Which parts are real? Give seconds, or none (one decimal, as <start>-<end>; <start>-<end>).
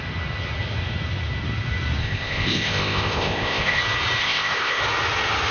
0.0-2.0; 3.8-4.2; 4.8-5.5